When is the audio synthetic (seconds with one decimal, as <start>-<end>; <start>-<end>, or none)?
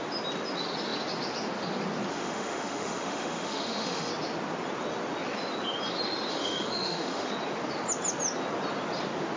2.1-4.1; 6.3-7.3